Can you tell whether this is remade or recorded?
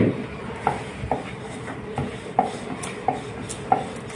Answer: recorded